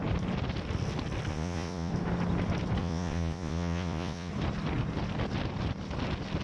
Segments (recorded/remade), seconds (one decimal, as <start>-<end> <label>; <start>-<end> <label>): 0.0-1.3 recorded; 1.3-1.9 remade; 1.9-2.8 recorded; 2.8-4.3 remade; 4.3-6.4 recorded